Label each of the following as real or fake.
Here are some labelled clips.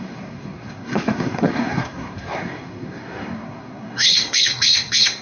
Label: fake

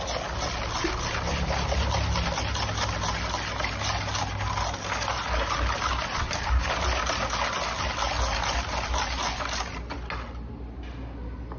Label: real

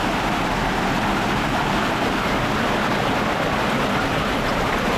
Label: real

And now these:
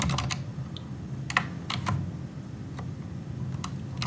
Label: real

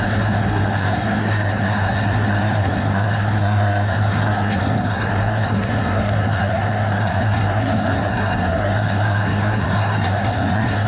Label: fake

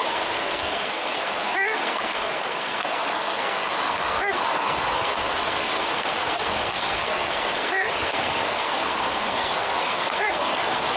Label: fake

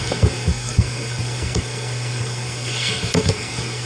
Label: fake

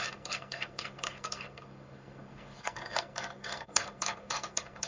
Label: fake